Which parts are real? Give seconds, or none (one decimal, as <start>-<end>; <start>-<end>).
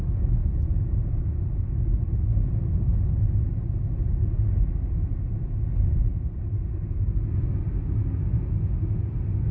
0.0-9.5